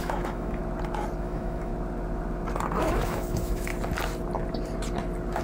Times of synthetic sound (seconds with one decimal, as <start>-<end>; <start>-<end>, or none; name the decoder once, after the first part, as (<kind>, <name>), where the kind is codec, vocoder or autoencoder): 0.0-0.6 (autoencoder, DAC-VAE); 1.2-1.7; 2.8-3.7